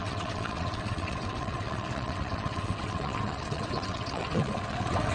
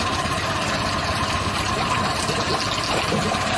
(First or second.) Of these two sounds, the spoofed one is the first